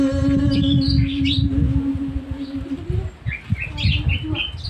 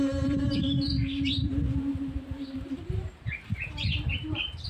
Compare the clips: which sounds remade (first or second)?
second